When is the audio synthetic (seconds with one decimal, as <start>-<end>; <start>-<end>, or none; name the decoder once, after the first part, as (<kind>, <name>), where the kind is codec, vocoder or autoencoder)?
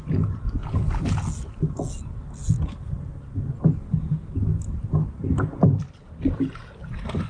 none